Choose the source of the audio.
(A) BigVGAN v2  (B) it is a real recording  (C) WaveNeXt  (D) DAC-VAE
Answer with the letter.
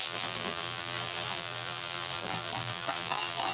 A